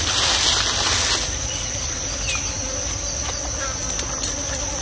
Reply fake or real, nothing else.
real